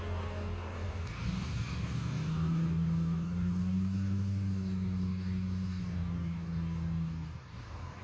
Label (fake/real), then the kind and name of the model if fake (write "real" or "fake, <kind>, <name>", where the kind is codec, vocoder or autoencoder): fake, codec, DAC